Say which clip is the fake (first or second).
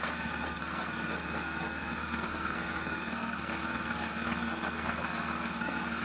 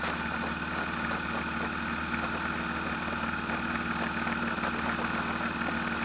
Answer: first